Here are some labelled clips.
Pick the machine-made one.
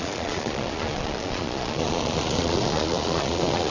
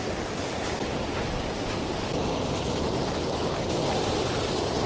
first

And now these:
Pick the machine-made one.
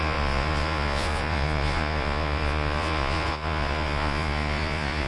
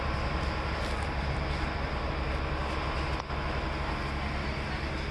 first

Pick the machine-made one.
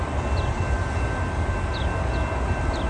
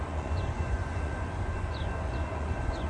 second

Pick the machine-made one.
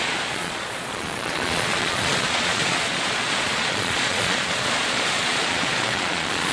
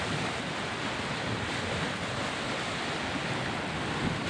first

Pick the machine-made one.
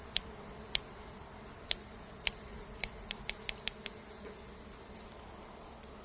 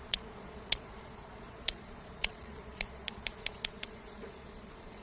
second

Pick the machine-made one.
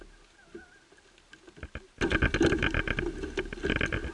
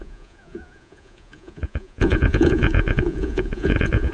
second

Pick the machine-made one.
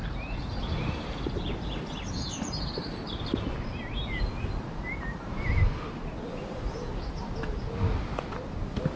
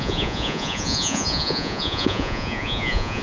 second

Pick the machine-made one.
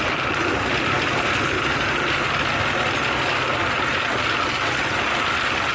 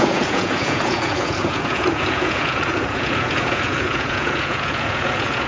second